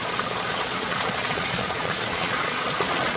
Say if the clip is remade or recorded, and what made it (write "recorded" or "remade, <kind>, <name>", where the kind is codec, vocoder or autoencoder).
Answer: remade, vocoder, Vocos